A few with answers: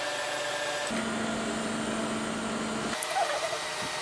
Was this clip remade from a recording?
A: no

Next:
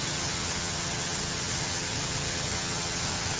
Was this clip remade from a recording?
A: yes